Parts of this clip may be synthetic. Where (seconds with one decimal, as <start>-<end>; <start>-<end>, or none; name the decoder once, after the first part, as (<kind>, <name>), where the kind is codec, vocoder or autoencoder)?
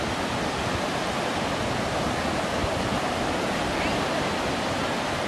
none